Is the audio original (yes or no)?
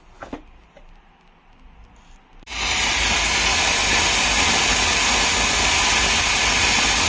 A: yes